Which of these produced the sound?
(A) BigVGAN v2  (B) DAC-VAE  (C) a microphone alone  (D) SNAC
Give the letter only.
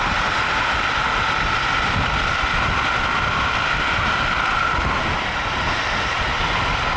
C